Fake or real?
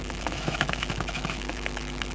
fake